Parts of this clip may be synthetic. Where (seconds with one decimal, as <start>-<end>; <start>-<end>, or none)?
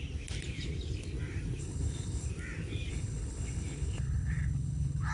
1.6-2.3; 2.9-5.1